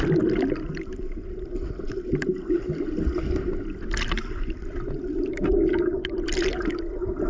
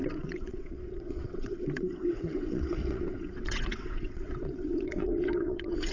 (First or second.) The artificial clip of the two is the second